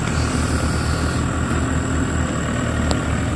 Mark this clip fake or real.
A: real